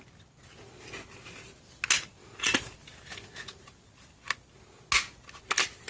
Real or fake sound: real